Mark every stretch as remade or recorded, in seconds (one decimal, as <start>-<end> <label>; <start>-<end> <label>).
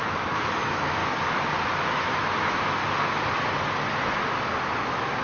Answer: 0.0-1.0 remade; 1.0-1.7 recorded; 1.7-2.8 remade; 2.8-4.8 recorded; 4.8-5.2 remade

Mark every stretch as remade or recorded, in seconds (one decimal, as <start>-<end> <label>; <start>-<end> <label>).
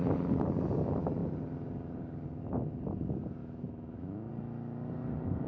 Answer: 0.0-3.4 recorded; 3.4-4.3 remade; 4.3-5.5 recorded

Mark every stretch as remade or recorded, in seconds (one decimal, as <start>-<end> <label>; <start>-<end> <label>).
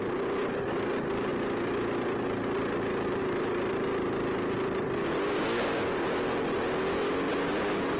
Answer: 0.0-8.0 recorded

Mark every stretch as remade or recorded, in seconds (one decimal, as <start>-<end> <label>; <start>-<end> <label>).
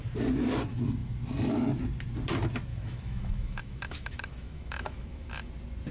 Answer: 0.0-2.7 recorded; 2.7-5.5 remade; 5.5-5.9 recorded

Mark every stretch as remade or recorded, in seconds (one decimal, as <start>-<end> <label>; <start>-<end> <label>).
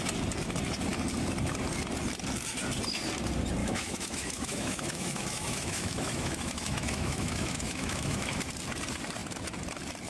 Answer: 0.0-3.6 recorded; 3.6-8.4 remade; 8.4-10.1 recorded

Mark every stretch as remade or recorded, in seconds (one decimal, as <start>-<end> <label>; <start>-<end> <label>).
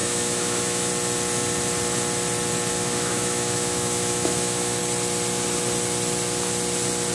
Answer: 0.0-0.9 remade; 0.9-2.7 recorded; 2.7-4.8 remade; 4.8-7.1 recorded